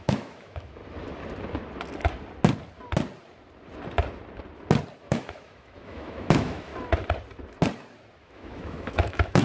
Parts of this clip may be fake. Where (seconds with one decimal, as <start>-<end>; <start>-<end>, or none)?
0.0-0.8; 5.0-6.7; 8.2-9.4